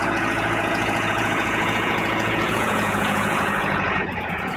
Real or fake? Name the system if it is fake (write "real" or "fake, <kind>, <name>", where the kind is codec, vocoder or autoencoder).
fake, vocoder, Vocos